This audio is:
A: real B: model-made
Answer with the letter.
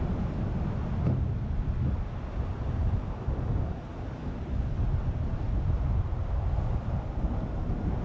A